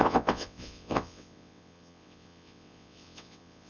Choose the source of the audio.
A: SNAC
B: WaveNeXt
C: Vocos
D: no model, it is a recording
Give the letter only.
B